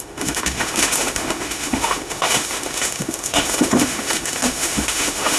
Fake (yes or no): yes